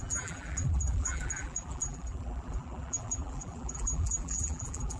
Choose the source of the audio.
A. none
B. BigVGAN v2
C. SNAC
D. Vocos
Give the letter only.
B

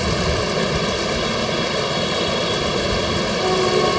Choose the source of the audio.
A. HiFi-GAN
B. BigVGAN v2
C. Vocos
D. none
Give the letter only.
D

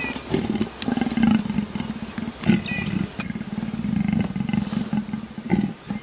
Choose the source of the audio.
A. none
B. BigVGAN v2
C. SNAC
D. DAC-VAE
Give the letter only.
A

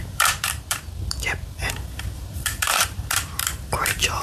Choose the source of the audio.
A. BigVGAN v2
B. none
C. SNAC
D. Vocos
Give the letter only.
A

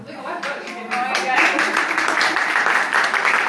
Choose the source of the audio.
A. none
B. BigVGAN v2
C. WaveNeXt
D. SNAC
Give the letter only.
B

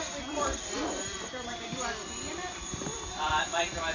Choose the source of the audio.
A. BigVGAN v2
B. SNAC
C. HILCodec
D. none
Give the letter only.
A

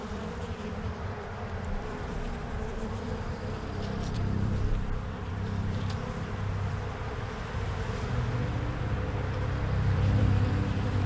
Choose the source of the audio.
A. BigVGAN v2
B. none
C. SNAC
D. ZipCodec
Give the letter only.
A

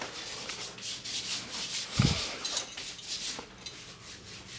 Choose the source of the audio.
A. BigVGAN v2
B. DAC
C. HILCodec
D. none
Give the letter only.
D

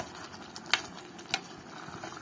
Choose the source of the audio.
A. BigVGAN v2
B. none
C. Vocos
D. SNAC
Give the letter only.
B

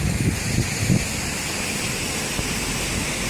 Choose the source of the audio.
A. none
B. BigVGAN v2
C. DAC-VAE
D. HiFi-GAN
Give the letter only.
A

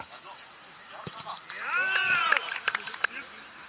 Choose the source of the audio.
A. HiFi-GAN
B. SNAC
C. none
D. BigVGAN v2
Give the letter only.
D